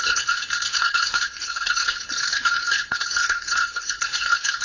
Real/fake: fake